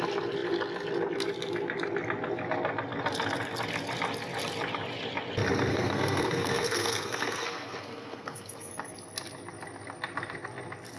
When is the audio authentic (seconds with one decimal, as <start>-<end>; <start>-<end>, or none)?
0.0-5.7; 8.7-11.0